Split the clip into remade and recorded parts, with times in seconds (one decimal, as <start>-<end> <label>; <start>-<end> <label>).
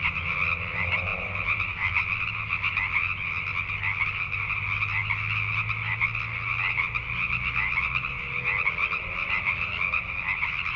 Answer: 0.0-10.8 recorded